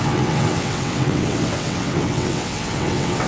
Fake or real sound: fake